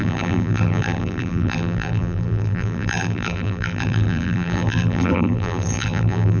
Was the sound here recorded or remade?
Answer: remade